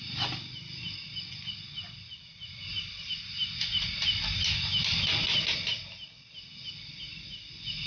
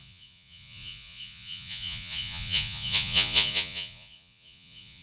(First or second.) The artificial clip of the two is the second